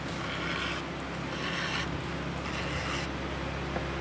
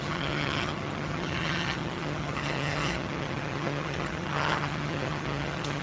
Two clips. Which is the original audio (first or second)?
first